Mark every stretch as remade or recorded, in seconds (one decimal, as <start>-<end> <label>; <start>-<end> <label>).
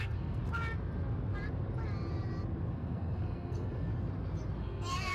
0.0-0.4 remade; 0.4-2.7 recorded; 2.7-3.9 remade; 3.9-4.6 recorded; 4.6-5.1 remade